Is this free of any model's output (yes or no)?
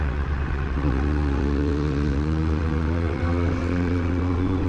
no